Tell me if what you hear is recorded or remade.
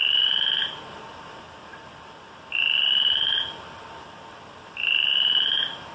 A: recorded